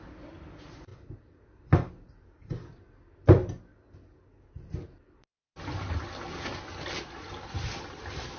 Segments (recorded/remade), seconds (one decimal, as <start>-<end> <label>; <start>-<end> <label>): 0.0-8.4 recorded